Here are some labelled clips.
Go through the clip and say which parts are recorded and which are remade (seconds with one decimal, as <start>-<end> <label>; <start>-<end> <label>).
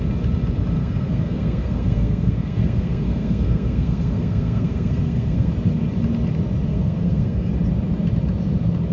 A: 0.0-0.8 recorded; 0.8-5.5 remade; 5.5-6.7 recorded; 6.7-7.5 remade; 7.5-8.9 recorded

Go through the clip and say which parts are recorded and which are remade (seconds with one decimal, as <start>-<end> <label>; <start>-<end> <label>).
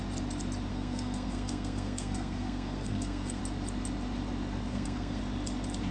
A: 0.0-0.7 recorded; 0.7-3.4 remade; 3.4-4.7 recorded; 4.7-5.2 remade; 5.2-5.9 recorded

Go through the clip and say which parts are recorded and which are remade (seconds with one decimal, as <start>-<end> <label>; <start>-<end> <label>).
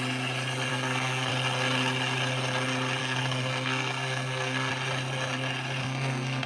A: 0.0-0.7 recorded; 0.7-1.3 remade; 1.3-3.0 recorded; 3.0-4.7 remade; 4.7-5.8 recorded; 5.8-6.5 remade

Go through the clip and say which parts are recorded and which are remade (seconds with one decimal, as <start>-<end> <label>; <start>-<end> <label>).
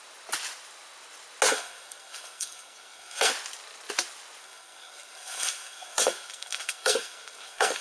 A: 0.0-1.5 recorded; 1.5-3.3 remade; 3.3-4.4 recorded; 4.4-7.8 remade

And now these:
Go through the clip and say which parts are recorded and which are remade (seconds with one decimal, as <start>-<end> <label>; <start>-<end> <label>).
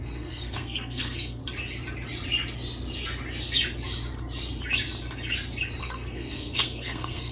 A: 0.0-1.4 remade; 1.4-5.8 recorded; 5.8-7.3 remade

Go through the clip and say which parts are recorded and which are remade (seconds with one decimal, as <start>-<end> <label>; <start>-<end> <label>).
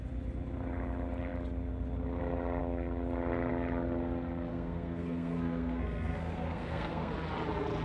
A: 0.0-4.5 recorded; 4.5-7.1 remade; 7.1-7.8 recorded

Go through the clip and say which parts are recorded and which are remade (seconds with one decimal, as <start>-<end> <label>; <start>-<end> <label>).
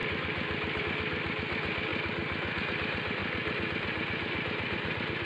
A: 0.0-5.3 recorded